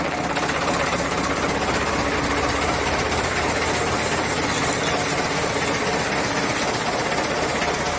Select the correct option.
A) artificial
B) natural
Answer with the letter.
B